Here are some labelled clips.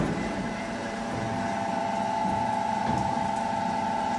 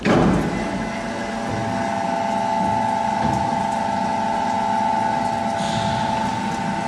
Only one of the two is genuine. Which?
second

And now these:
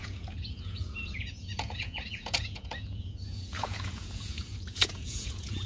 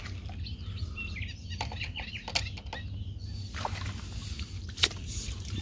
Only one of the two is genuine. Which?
second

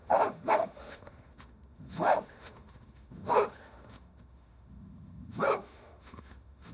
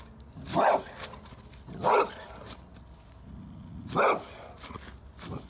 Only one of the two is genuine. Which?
second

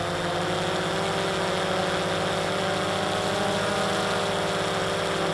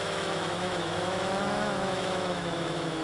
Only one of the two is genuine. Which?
first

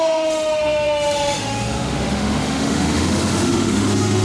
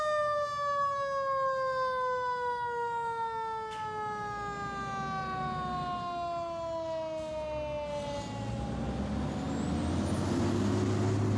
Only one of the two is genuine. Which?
second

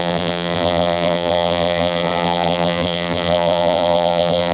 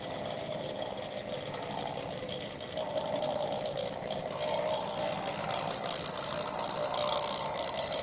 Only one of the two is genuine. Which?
second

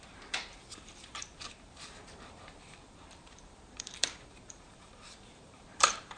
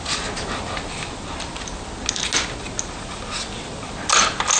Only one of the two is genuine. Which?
second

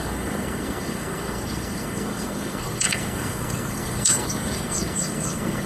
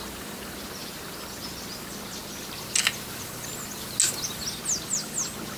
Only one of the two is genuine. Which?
second